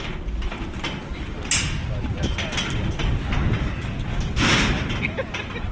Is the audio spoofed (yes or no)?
no